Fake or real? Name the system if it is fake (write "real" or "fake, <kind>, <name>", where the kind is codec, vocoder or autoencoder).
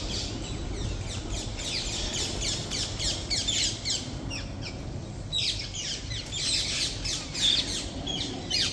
real